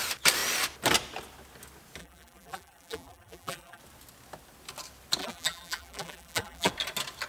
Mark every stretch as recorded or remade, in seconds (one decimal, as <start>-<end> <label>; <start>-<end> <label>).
0.0-2.0 recorded; 2.0-3.8 remade; 3.8-5.2 recorded; 5.2-6.7 remade; 6.7-7.3 recorded

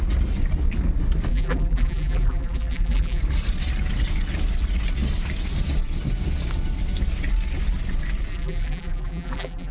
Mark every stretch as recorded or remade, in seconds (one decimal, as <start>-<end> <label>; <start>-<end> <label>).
0.0-1.3 recorded; 1.3-3.2 remade; 3.2-8.3 recorded; 8.3-9.7 remade